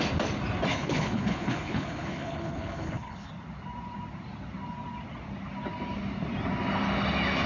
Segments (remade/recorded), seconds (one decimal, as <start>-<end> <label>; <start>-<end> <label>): 0.0-0.7 recorded; 0.7-3.3 remade; 3.3-7.5 recorded